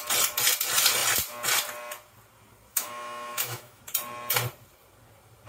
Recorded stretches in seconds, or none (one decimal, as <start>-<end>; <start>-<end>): 0.0-2.7; 3.8-5.5